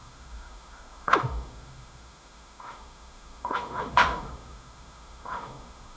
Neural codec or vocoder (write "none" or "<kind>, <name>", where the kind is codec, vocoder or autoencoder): autoencoder, DAC-VAE